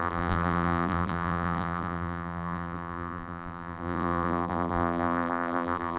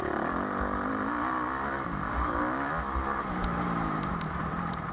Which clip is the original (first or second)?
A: second